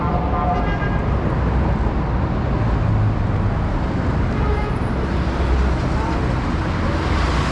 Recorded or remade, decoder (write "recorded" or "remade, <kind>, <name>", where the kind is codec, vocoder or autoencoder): recorded